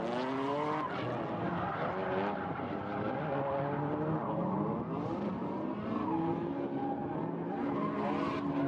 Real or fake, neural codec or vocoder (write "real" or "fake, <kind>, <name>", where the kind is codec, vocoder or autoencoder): real